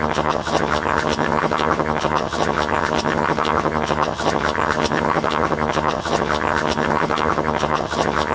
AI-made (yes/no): yes